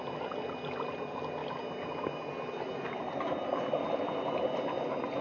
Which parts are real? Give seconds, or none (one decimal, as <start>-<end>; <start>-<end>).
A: 0.0-5.2